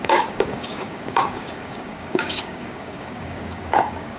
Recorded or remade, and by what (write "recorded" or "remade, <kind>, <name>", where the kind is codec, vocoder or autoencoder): remade, codec, DAC